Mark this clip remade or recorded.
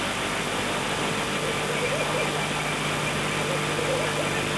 recorded